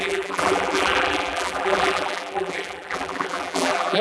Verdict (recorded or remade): remade